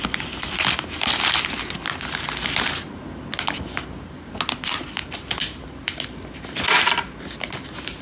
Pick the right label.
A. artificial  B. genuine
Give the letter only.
B